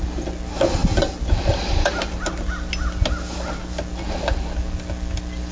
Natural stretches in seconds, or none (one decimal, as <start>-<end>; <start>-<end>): 0.0-5.5